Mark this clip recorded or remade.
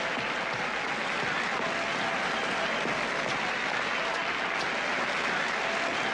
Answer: recorded